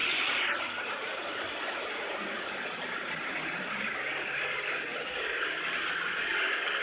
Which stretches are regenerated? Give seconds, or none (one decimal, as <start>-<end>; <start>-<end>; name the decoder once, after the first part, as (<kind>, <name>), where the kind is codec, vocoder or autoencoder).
0.0-4.1 (vocoder, BigVGAN v2); 4.9-6.3

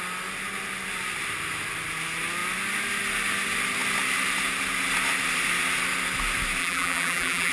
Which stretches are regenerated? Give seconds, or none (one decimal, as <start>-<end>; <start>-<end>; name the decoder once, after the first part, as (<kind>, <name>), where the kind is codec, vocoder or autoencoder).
6.6-7.5 (vocoder, BigVGAN v2)

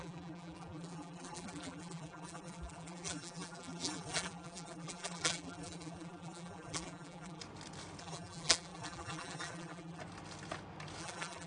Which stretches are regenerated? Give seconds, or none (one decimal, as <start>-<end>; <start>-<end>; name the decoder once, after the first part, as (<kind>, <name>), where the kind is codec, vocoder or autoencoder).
0.0-7.4 (vocoder, BigVGAN v2); 8.0-10.0; 11.0-11.5